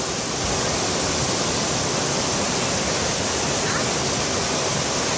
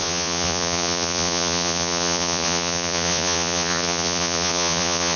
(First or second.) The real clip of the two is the first